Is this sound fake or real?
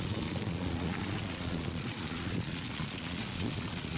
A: fake